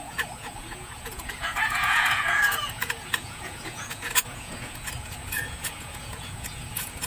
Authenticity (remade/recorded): remade